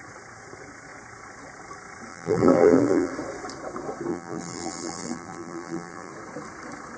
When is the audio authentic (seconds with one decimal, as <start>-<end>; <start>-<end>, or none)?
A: 0.0-2.1; 3.1-4.1; 6.1-7.0